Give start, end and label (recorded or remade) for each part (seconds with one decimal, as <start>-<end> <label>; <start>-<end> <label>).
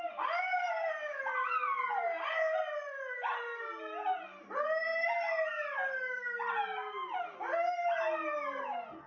0.0-9.1 recorded